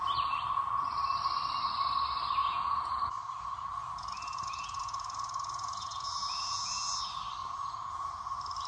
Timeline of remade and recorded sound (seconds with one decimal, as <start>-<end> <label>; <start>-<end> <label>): 0.0-2.4 recorded; 2.4-3.0 remade; 3.0-3.8 recorded; 3.8-6.7 remade; 6.7-7.4 recorded; 7.4-8.1 remade; 8.1-8.7 recorded